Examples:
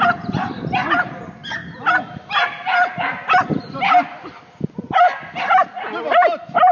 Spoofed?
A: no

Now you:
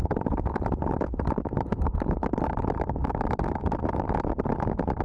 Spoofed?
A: no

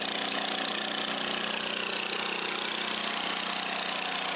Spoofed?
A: no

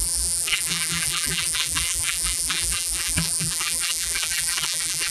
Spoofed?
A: yes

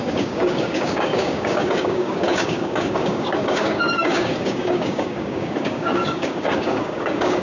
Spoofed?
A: yes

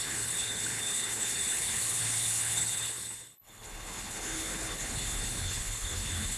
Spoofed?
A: yes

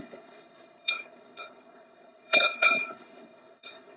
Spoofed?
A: yes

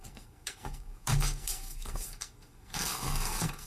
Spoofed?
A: yes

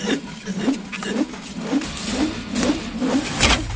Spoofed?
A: no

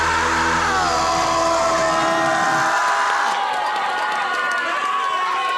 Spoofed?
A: no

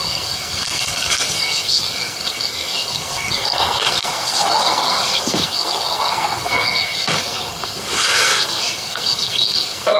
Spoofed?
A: yes